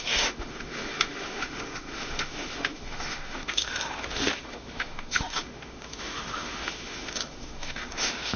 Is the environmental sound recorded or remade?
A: remade